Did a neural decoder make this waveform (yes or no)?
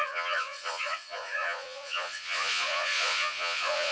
yes